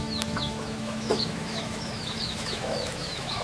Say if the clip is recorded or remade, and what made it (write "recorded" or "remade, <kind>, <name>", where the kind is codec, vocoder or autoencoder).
remade, autoencoder, DAC-VAE